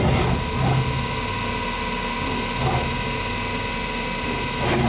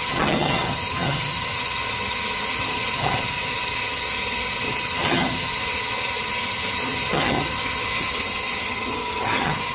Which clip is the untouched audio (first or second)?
first